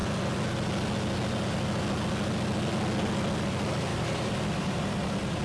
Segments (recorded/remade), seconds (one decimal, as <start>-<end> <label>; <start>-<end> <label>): 0.0-3.9 recorded; 3.9-4.9 remade; 4.9-5.4 recorded